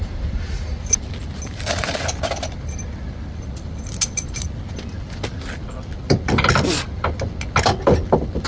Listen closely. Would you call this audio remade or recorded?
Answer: recorded